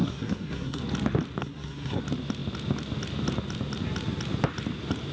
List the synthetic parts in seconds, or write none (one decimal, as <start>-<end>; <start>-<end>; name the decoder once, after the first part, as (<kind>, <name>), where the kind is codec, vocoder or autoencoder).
0.0-0.8 (codec, SNAC); 1.4-2.0